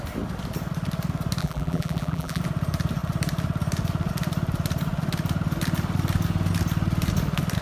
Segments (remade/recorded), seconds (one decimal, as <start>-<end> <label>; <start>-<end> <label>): 0.0-1.4 recorded; 1.4-2.4 remade; 2.4-7.6 recorded